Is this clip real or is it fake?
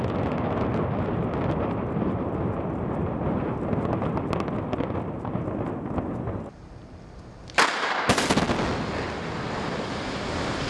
real